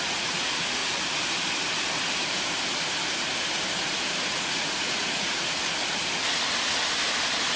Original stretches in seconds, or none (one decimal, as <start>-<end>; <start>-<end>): 0.8-4.3; 5.6-7.6